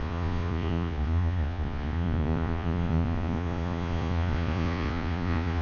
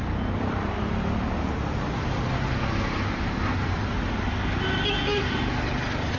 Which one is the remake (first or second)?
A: first